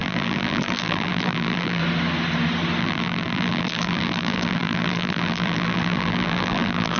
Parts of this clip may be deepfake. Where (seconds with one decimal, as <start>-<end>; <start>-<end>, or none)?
0.0-1.8; 2.8-7.0